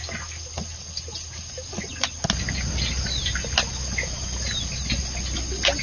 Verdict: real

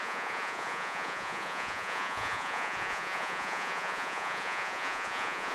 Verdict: fake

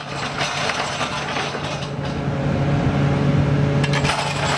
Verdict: real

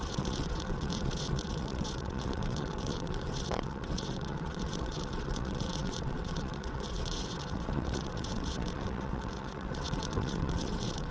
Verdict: fake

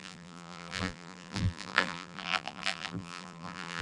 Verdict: fake